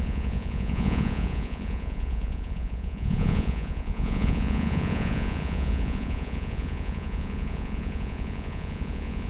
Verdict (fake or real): fake